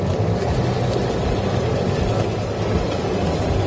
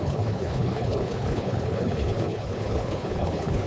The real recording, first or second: first